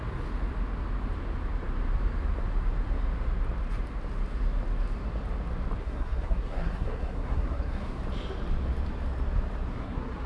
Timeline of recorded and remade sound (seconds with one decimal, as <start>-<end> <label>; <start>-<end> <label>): 0.0-5.8 recorded; 5.8-8.0 remade; 8.0-9.7 recorded; 9.7-10.3 remade